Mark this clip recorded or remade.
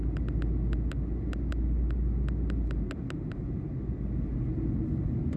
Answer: recorded